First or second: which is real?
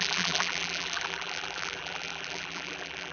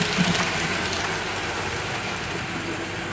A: second